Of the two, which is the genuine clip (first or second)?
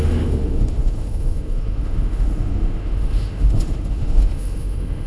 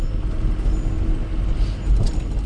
second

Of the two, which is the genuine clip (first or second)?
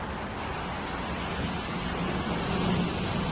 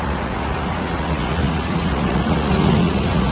first